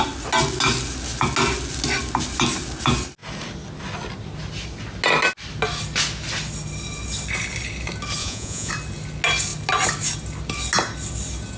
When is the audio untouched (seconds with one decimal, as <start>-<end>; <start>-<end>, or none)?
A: 0.0-8.2; 8.7-11.6